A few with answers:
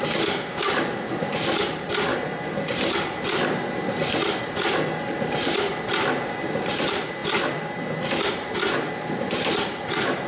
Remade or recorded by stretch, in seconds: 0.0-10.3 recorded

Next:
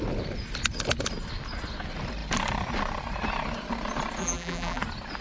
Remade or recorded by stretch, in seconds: 0.0-4.2 recorded; 4.2-4.8 remade; 4.8-5.2 recorded